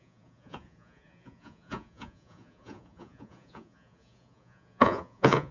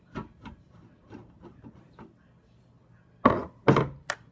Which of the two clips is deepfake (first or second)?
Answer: first